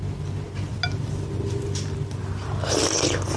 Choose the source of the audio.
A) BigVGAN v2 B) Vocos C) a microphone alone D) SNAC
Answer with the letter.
C